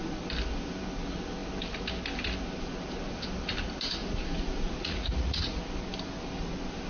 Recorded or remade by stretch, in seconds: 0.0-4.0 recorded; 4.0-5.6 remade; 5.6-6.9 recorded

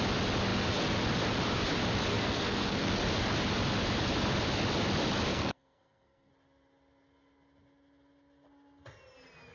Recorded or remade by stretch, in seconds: 0.0-2.1 recorded; 2.1-2.9 remade; 2.9-5.3 recorded; 5.3-6.3 remade; 6.3-9.5 recorded

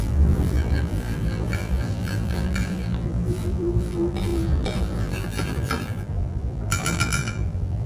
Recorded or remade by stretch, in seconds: 0.0-7.9 remade

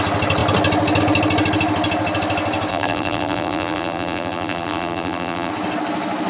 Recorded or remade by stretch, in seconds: 0.0-2.7 recorded; 2.7-5.5 remade; 5.5-6.3 recorded

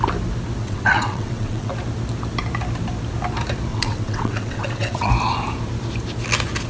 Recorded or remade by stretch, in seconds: 0.0-0.6 recorded; 0.6-1.7 remade; 1.7-3.7 recorded; 3.7-5.1 remade; 5.1-6.7 recorded

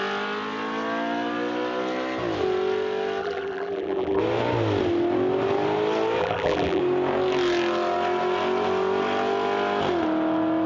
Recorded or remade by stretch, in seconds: 0.0-3.2 recorded; 3.2-4.2 remade; 4.2-6.2 recorded; 6.2-6.8 remade; 6.8-10.7 recorded